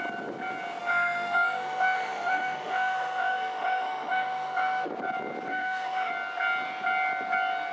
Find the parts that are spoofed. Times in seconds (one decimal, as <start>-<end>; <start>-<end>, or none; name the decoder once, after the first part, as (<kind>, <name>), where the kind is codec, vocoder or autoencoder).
0.8-4.9 (autoencoder, DAC-VAE); 5.5-6.1